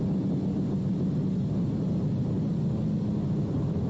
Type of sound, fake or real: real